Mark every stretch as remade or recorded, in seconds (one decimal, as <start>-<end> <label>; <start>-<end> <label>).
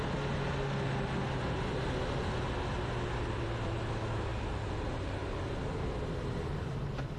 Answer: 0.0-7.2 recorded